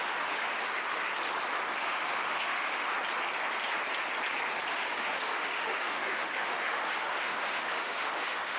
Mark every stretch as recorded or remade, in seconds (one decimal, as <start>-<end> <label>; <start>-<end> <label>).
0.0-1.1 remade; 1.1-1.8 recorded; 1.8-2.9 remade; 2.9-4.7 recorded; 4.7-8.6 remade